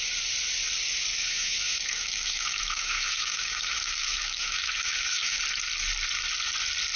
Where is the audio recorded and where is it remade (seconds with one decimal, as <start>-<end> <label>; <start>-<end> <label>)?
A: 0.0-1.2 recorded; 1.2-5.4 remade; 5.4-7.0 recorded